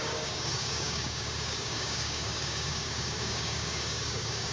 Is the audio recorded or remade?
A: remade